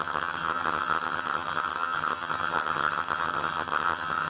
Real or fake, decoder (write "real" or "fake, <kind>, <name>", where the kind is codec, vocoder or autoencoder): fake, vocoder, HiFi-GAN